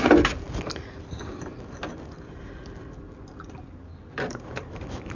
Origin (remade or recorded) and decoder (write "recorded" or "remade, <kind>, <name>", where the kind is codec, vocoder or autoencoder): recorded